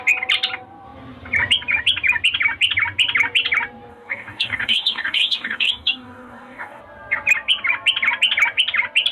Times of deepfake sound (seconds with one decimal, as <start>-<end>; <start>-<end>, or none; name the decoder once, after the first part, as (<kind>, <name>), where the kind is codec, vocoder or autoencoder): 3.9-6.8 (codec, DAC)